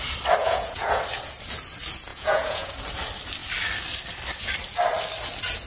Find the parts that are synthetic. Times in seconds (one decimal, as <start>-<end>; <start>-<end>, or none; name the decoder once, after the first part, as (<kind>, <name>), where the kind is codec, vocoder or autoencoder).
0.4-1.0 (vocoder, Vocos); 2.1-2.7